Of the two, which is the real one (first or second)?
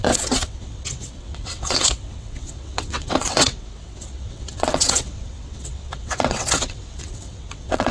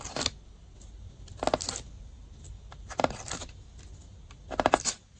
second